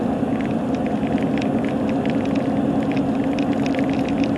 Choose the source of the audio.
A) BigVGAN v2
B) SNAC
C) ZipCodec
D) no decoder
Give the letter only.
D